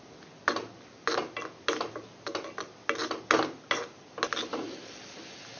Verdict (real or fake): real